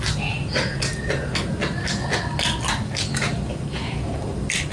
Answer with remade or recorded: recorded